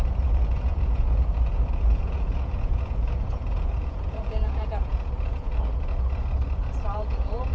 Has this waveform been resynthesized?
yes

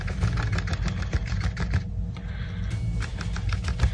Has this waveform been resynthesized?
no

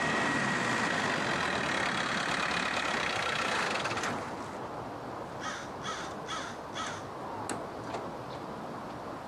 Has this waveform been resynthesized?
no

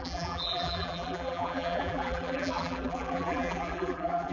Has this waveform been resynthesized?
yes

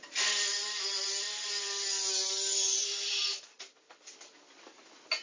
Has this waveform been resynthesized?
no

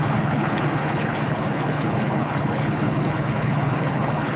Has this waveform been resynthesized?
yes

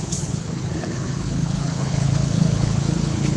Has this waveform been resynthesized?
yes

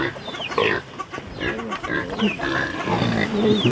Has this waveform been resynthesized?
yes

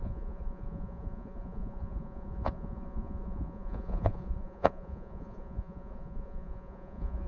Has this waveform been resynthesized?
yes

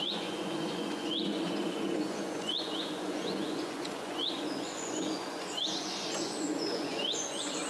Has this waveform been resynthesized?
yes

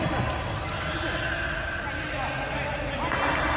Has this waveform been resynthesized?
no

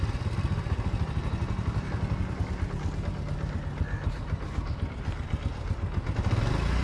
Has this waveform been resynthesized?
no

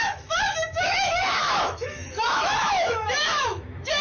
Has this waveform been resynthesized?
yes